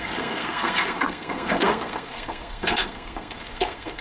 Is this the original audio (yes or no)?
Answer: no